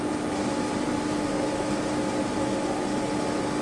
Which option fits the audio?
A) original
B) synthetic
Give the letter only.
A